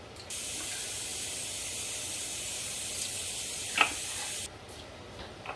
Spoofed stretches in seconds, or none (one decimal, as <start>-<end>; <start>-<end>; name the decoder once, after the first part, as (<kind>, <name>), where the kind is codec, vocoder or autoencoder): none